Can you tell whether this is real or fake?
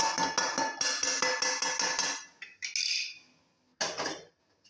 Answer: real